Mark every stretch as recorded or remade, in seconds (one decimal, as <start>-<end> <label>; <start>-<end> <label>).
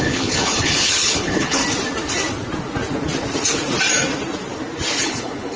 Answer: 0.0-1.6 remade; 1.6-5.0 recorded; 5.0-5.6 remade